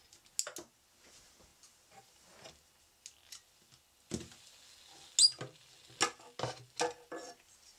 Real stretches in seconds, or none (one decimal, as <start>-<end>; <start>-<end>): 0.0-7.8